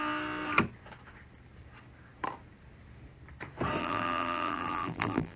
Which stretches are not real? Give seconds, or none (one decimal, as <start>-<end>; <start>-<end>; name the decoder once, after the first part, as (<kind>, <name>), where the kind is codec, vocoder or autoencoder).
3.8-5.4 (vocoder, BigVGAN v2)